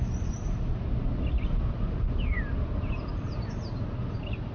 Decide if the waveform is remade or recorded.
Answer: recorded